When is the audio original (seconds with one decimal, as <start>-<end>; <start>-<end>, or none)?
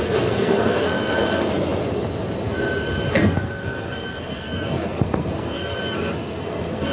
1.5-3.1; 5.8-6.4